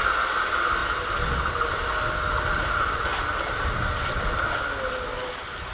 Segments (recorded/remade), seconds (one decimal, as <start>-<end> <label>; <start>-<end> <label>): 0.0-5.7 recorded